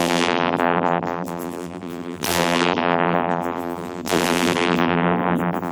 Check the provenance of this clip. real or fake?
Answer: fake